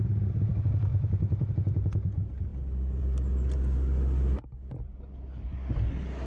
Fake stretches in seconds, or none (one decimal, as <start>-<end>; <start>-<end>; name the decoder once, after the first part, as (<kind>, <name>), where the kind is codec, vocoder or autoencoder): 0.9-1.5 (vocoder, BigVGAN v2); 2.5-3.0